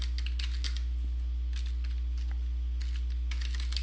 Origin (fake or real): real